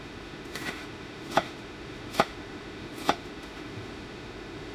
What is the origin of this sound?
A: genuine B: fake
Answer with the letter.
B